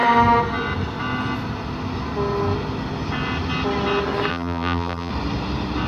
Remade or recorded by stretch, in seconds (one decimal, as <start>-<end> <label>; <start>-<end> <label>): 0.0-4.3 recorded; 4.3-5.1 remade; 5.1-5.9 recorded